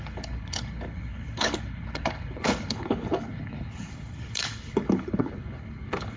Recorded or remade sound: remade